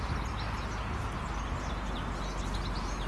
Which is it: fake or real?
real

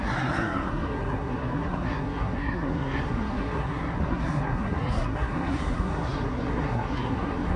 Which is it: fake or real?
fake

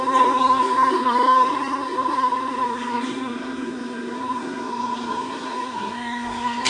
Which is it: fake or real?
fake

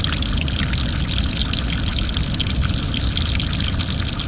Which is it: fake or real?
real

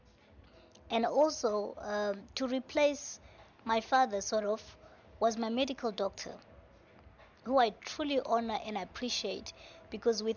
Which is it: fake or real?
real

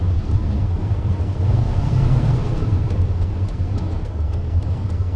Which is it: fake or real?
fake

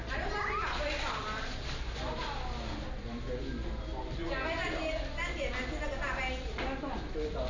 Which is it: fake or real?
real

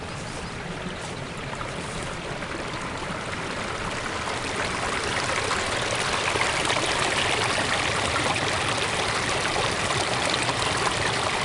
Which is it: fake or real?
real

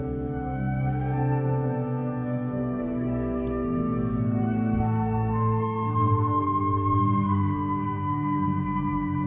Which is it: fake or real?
fake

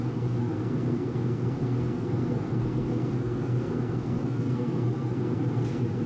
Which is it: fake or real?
fake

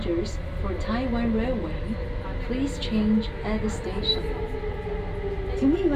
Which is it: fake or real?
real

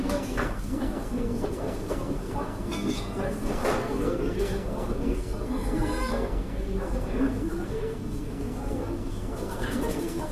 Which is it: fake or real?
fake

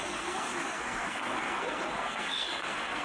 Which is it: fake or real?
fake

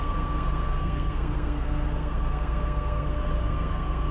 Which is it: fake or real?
fake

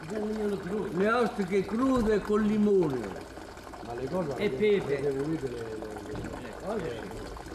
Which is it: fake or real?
real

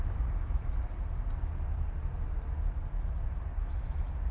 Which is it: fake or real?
real